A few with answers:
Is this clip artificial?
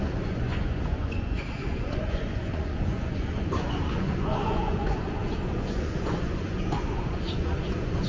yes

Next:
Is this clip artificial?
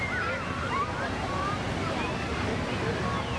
no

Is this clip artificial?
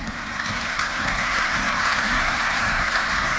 yes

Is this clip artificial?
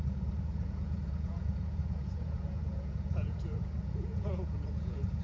yes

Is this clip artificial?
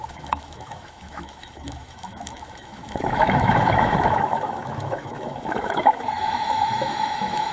yes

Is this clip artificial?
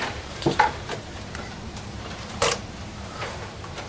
yes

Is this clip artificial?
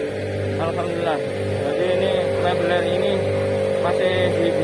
no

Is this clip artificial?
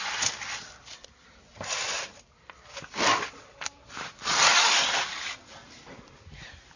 no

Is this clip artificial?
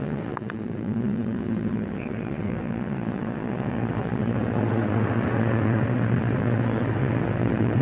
yes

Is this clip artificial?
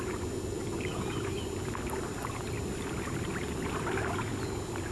no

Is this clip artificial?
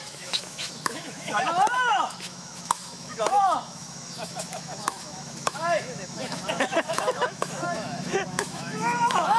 yes